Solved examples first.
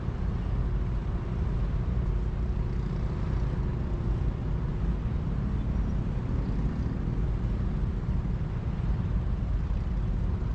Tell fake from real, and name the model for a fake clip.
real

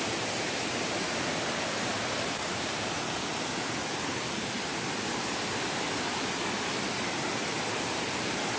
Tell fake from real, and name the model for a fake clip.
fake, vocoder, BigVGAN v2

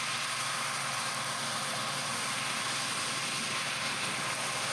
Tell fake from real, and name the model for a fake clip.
real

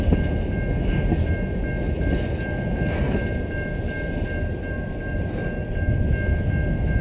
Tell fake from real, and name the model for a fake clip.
real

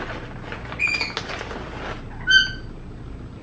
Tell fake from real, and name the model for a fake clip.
real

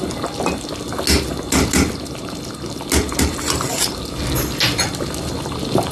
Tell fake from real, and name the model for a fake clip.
real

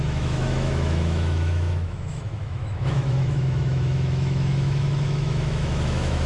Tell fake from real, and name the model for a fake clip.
fake, autoencoder, DAC-VAE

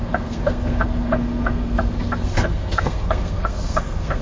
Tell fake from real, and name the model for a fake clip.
fake, codec, SNAC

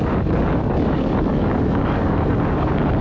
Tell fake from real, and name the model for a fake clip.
fake, codec, DAC